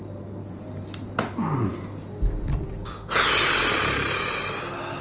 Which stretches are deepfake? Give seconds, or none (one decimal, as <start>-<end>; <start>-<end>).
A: 0.4-1.0